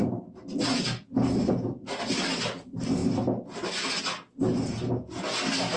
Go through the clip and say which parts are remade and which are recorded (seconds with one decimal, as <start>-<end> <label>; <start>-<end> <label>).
0.0-5.8 recorded